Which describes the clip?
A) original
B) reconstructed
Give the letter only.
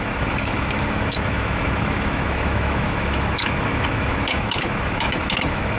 B